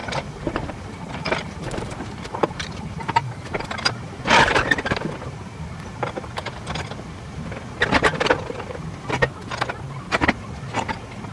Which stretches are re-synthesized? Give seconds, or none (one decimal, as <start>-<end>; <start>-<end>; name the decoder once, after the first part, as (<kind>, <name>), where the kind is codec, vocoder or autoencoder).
0.0-5.1 (vocoder, BigVGAN v2)

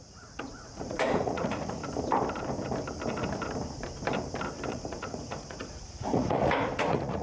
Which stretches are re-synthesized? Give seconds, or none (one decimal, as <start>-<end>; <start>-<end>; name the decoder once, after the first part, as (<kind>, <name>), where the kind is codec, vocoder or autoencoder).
0.0-1.8 (vocoder, Vocos); 4.7-7.2

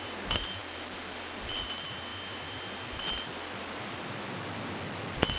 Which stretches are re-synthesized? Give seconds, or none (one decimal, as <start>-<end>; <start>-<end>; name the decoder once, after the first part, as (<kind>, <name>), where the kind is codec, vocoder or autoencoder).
none

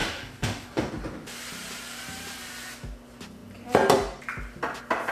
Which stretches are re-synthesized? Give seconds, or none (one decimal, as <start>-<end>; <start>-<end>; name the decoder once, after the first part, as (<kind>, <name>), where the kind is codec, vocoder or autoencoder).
0.0-0.9 (codec, DAC)

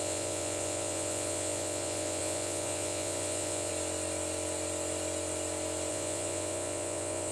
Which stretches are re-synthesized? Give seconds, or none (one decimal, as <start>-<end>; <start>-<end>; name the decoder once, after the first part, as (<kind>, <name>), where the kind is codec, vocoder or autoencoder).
0.0-3.7 (vocoder, Vocos); 5.9-7.3